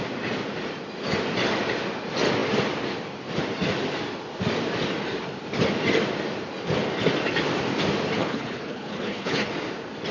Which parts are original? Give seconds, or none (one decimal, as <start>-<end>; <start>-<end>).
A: 0.0-8.2; 9.5-10.1